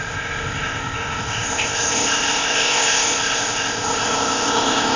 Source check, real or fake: fake